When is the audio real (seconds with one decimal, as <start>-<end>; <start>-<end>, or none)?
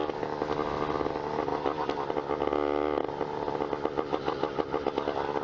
0.0-5.4